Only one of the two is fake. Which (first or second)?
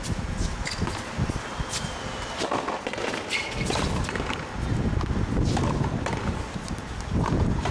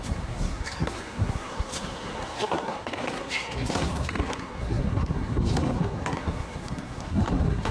second